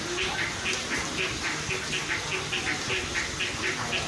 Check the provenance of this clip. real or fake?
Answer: real